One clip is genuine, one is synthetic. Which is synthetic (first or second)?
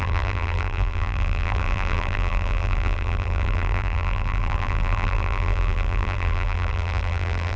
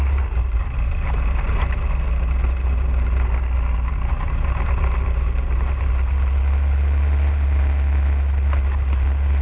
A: first